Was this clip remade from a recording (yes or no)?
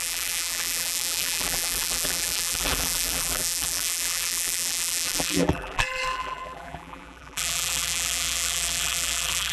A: yes